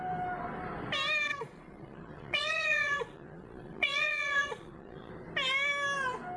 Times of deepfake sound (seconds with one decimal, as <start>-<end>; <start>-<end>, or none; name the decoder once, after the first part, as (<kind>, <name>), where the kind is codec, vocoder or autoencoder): 1.3-5.1 (vocoder, Vocos)